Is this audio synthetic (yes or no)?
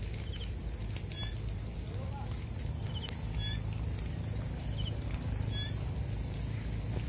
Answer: no